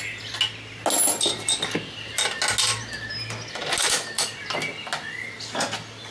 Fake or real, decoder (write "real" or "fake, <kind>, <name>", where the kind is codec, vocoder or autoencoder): real